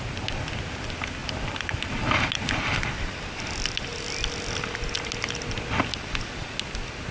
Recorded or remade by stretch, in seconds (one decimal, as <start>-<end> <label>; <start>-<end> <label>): 0.0-7.1 recorded

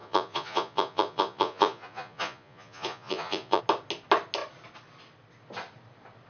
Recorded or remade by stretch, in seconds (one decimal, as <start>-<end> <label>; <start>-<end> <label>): 0.0-3.6 remade; 3.6-6.3 recorded

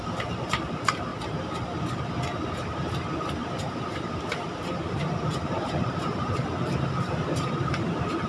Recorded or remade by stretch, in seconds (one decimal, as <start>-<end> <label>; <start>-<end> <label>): 0.0-1.1 remade; 1.1-3.6 recorded; 3.6-8.3 remade